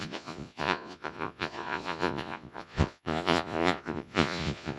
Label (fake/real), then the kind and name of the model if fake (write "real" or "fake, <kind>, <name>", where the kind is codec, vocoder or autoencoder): fake, vocoder, Vocos